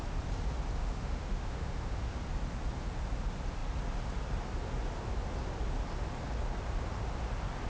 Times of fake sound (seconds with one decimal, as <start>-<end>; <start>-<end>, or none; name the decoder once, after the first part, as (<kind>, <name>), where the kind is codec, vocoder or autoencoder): 0.8-2.2 (autoencoder, DAC-VAE)

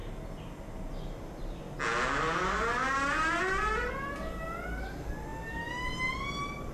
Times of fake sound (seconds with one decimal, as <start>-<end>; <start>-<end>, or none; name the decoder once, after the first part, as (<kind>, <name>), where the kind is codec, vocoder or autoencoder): none